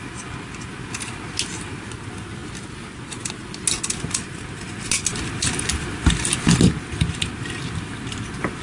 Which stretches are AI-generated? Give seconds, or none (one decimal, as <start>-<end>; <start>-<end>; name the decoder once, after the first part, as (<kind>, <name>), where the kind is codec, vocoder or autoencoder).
none